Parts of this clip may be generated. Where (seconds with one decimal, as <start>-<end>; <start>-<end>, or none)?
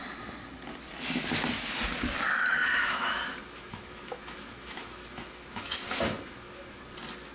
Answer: 2.6-6.8